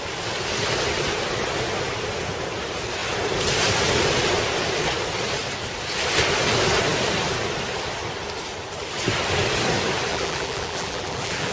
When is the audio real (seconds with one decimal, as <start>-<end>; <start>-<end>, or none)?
0.0-10.1